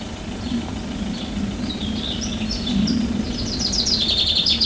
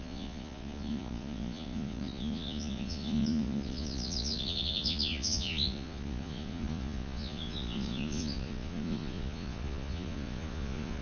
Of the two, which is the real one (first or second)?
first